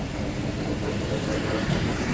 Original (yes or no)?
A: yes